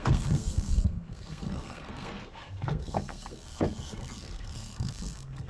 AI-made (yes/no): yes